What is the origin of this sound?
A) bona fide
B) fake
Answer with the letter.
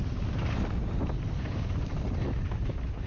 A